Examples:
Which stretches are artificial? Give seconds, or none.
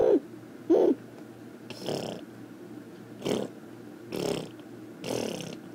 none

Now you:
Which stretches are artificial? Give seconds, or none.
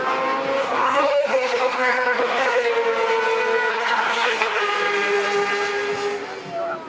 0.6-2.7 (codec, SNAC); 3.7-4.6